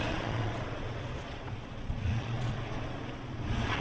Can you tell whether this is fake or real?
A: fake